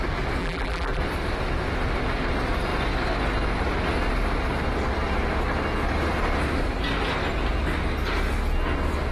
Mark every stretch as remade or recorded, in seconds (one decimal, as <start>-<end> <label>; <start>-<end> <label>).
0.0-0.4 recorded; 0.4-1.0 remade; 1.0-9.1 recorded